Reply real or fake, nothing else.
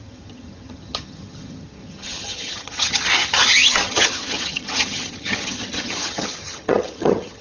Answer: fake